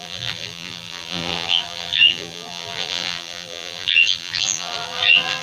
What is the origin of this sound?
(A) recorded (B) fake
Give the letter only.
B